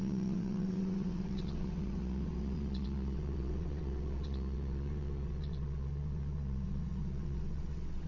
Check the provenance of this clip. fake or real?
fake